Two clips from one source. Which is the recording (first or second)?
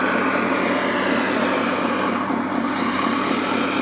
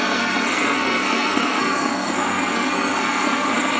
first